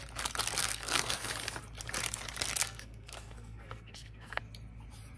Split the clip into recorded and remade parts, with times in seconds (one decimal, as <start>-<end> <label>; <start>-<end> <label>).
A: 0.0-0.6 recorded; 0.6-1.3 remade; 1.3-2.6 recorded; 2.6-4.4 remade; 4.4-5.2 recorded